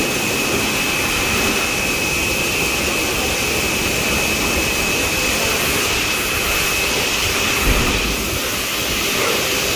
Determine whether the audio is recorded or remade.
remade